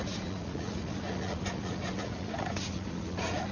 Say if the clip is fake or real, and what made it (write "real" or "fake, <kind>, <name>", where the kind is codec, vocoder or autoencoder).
fake, vocoder, Vocos